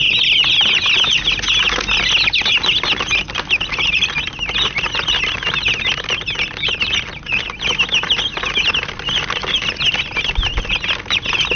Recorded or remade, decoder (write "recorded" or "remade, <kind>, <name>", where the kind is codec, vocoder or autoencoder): recorded